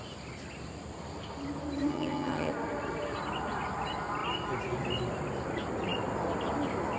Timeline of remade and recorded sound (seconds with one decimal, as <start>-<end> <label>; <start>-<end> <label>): 0.0-1.9 recorded; 1.9-2.5 remade; 2.5-7.0 recorded